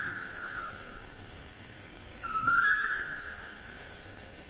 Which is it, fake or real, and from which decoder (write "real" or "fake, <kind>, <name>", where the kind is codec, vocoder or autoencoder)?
fake, codec, SNAC